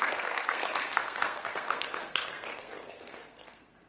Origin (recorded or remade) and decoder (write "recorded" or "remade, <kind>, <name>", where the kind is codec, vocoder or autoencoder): remade, codec, SNAC